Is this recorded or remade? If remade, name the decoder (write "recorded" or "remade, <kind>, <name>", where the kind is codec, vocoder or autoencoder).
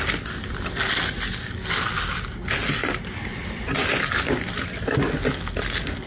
recorded